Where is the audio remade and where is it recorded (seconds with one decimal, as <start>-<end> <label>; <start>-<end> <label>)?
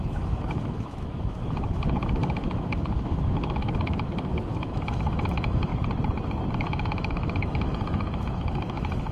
0.0-5.7 remade; 5.7-6.5 recorded; 6.5-9.1 remade